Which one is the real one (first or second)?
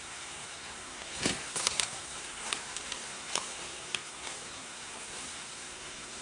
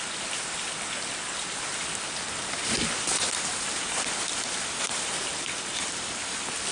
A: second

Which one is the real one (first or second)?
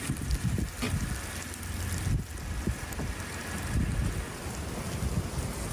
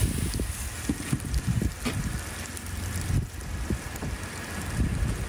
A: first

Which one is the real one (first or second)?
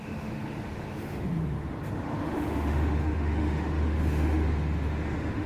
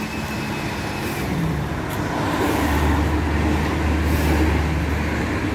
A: second